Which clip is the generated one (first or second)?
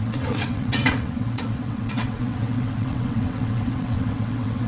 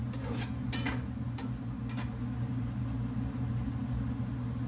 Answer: first